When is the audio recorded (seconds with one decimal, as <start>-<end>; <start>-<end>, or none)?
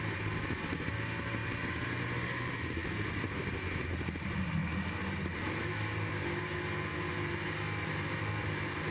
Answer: 0.0-8.9